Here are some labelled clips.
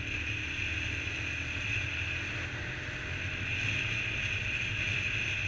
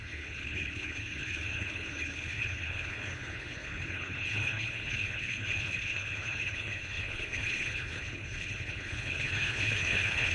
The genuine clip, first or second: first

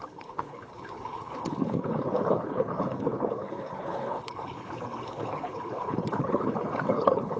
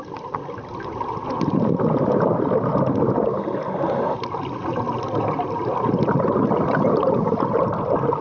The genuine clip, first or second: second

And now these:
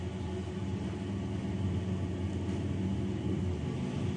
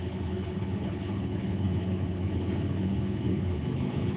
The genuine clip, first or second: first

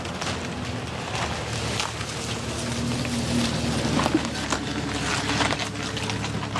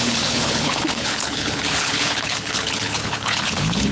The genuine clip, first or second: first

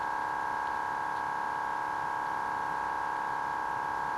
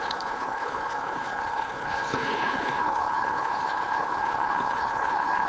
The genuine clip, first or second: first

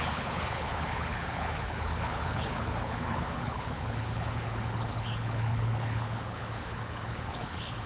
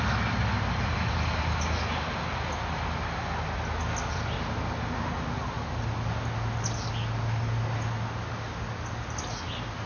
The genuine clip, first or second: second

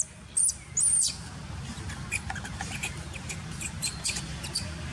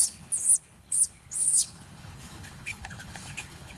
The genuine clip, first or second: first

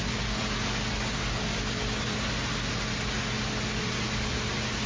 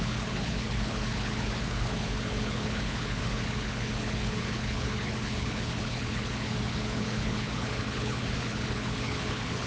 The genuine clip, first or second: first